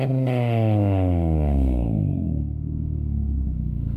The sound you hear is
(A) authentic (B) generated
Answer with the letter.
B